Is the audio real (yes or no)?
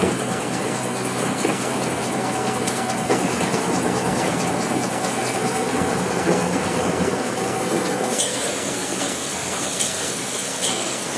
no